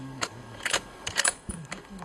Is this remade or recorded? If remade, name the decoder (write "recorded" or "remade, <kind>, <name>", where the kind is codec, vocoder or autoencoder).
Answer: remade, codec, DAC